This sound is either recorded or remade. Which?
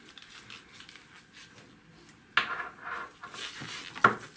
recorded